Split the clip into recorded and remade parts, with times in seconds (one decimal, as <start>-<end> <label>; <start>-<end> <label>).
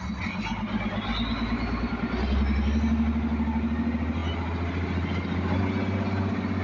0.0-6.6 recorded